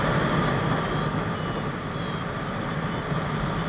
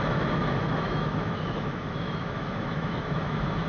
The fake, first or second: second